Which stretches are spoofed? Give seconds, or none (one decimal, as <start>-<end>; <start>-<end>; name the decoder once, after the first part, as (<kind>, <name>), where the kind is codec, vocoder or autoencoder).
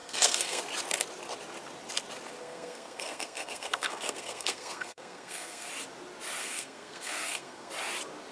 0.0-0.6 (codec, SNAC); 2.4-5.7; 6.4-7.7